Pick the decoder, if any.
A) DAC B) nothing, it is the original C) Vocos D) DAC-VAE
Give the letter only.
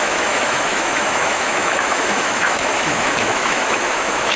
D